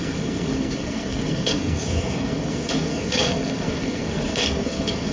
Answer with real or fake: fake